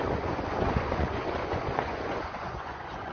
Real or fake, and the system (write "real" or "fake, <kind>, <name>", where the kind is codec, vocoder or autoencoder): fake, vocoder, Vocos